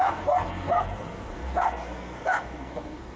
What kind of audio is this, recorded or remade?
remade